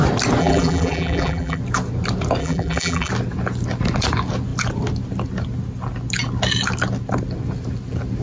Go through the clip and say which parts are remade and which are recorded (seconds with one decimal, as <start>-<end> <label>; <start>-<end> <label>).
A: 0.0-0.4 recorded; 0.4-1.6 remade; 1.6-2.4 recorded; 2.4-3.1 remade; 3.1-8.2 recorded